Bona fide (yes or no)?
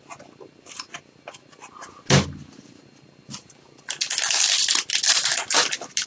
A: yes